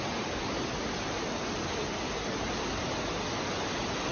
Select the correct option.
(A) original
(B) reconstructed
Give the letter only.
A